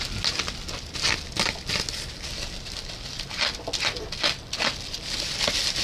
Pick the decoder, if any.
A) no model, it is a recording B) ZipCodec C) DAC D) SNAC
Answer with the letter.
A